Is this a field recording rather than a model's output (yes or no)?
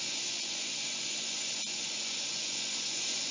no